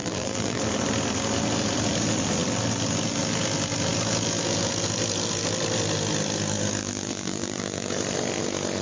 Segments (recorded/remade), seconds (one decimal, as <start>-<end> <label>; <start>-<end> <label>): 0.0-0.6 remade; 0.6-6.8 recorded; 6.8-7.9 remade; 7.9-8.8 recorded